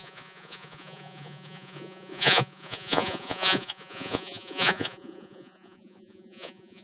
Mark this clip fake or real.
fake